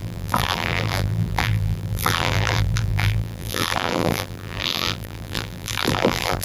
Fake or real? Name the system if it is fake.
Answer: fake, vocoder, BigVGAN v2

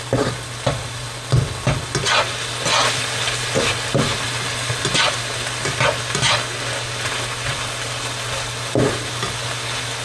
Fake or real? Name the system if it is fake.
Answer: real